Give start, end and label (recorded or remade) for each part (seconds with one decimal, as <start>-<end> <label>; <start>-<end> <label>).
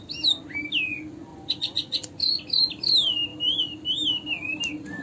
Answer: 0.0-1.3 recorded; 1.3-2.4 remade; 2.4-5.0 recorded